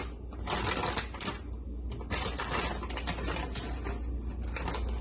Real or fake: real